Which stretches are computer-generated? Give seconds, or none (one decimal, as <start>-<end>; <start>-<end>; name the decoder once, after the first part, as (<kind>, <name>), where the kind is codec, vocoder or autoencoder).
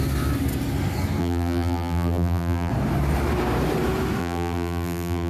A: 1.2-2.7 (vocoder, BigVGAN v2); 4.2-5.3